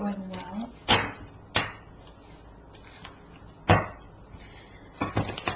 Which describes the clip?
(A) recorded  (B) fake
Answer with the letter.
A